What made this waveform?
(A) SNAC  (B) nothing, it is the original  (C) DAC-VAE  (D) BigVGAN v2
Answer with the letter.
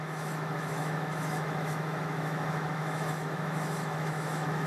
C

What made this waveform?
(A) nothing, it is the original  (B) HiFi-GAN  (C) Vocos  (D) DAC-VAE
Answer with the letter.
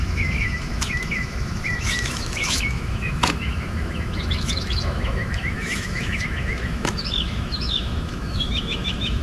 D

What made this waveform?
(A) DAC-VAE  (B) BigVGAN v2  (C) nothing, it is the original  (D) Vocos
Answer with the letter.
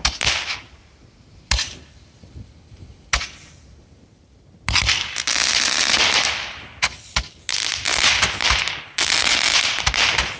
C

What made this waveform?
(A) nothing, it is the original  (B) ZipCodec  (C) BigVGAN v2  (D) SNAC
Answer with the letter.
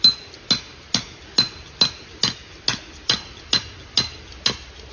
A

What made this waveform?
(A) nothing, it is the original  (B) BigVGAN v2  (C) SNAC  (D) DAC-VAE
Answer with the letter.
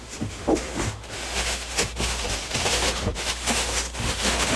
D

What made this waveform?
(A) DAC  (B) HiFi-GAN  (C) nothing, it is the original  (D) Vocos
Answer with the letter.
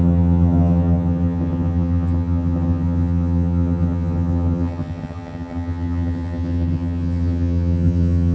B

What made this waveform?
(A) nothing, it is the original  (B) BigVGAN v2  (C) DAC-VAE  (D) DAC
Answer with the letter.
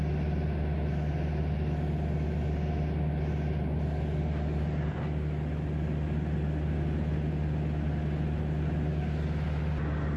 A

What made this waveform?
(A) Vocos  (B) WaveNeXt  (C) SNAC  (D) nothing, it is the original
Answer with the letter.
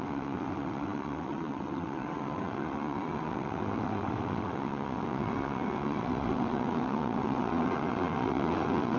B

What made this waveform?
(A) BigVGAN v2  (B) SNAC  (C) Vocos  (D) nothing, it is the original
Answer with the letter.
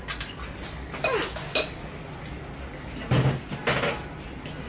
D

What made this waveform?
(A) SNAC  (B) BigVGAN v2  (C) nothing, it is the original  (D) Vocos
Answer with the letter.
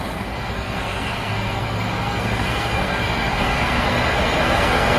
A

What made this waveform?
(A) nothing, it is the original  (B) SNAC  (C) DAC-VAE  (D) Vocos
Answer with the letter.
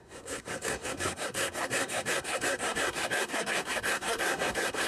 B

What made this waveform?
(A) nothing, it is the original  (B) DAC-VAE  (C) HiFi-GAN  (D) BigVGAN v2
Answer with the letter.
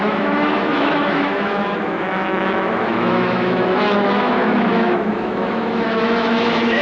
B